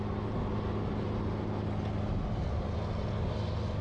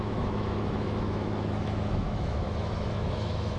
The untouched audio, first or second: first